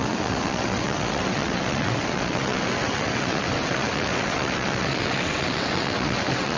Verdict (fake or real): fake